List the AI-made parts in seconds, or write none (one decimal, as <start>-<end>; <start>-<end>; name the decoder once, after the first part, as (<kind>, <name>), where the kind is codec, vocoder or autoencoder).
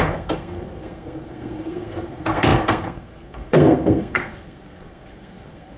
0.0-5.8 (codec, SNAC)